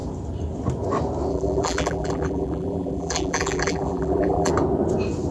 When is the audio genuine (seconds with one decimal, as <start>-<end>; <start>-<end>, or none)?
0.0-1.3; 4.5-5.3